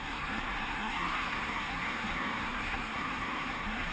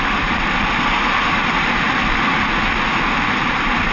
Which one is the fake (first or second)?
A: first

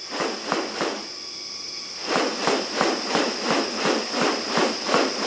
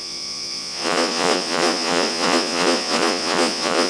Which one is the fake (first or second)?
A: second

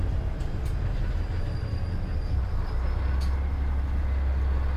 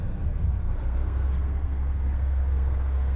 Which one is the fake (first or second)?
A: second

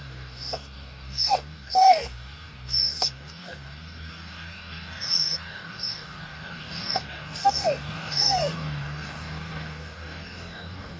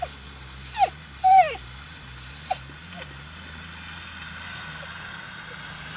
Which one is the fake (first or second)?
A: first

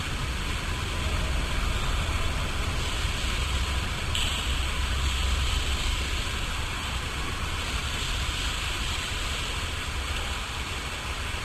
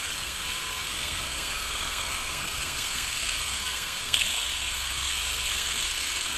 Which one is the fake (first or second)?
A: second